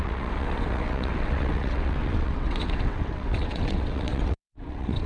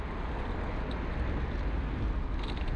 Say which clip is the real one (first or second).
second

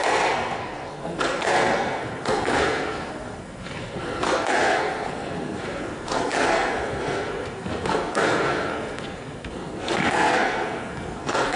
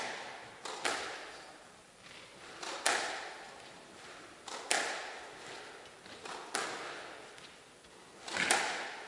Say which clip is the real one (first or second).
second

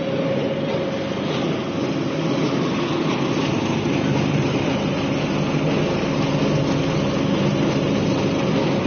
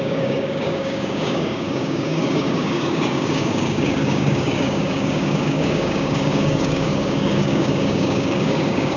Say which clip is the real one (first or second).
first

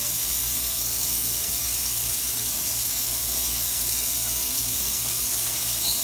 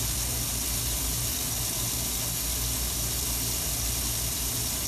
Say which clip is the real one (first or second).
second